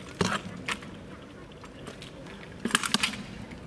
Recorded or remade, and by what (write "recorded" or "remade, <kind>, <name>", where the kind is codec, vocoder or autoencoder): recorded